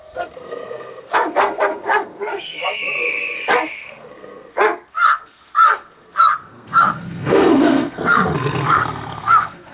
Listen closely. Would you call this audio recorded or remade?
remade